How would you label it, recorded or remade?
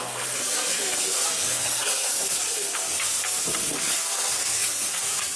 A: remade